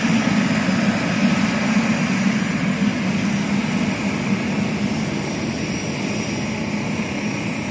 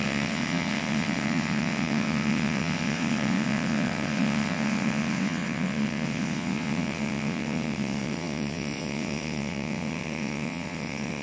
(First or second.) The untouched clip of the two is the first